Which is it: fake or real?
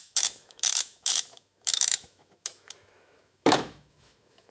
fake